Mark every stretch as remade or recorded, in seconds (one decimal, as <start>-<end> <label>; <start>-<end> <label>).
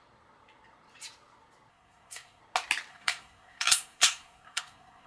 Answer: 0.0-1.7 recorded; 1.7-2.4 remade; 2.4-2.9 recorded; 2.9-5.1 remade